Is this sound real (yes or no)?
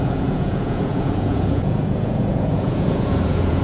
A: no